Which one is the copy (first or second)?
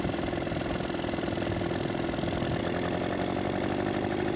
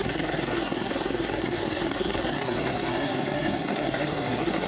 second